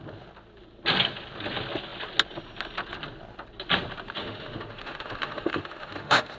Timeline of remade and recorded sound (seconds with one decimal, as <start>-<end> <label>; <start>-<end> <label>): 0.0-4.2 recorded; 4.2-6.4 remade